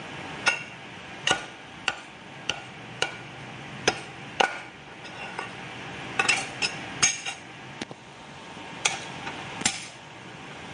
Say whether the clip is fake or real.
fake